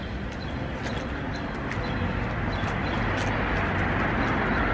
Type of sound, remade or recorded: recorded